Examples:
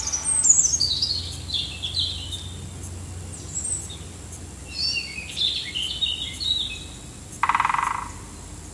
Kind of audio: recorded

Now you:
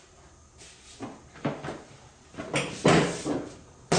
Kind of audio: recorded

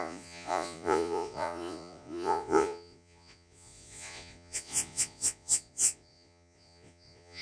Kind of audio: remade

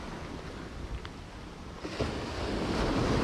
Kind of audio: recorded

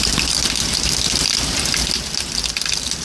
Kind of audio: recorded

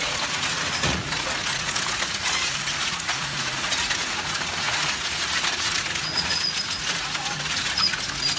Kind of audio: remade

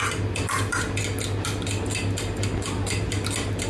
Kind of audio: recorded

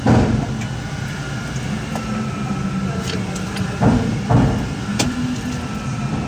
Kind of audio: recorded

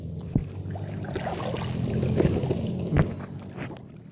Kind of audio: recorded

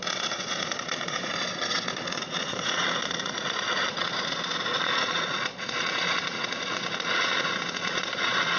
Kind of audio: remade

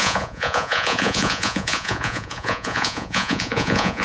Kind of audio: remade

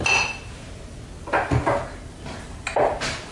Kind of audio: recorded